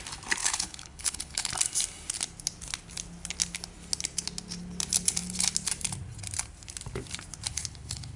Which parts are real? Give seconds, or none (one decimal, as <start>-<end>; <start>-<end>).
0.0-0.4; 1.5-7.5